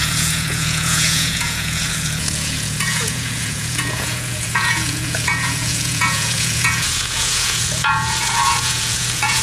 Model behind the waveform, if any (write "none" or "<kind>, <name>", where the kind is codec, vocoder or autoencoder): vocoder, Vocos